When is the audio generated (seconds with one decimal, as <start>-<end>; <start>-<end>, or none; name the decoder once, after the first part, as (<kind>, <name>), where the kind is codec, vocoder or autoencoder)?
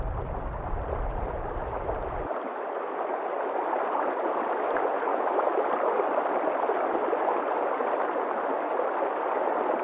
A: 5.1-5.6 (autoencoder, DAC-VAE)